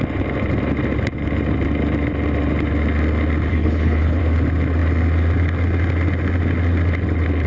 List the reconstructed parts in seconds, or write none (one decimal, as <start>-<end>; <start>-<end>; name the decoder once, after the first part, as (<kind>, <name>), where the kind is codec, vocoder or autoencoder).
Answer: 3.5-4.2 (codec, HILCodec)